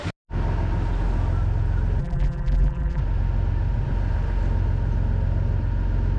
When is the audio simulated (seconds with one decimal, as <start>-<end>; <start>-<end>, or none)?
2.0-3.0